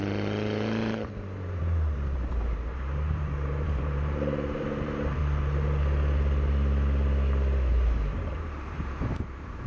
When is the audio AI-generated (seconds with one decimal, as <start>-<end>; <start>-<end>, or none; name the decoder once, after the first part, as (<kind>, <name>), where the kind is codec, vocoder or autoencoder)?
0.0-5.2 (vocoder, BigVGAN v2); 7.7-9.7